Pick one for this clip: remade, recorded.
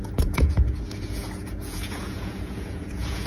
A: remade